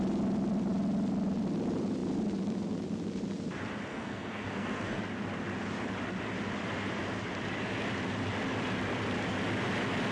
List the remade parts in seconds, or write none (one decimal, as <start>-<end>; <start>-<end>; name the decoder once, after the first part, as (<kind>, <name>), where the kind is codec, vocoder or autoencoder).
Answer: 3.9-5.0 (codec, SNAC)